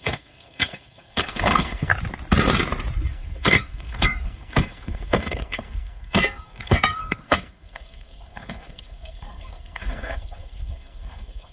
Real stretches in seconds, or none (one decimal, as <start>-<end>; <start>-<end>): 1.9-3.1